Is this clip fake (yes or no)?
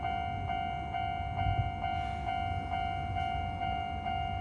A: no